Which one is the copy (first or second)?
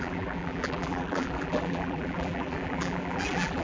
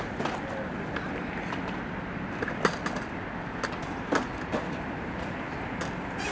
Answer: first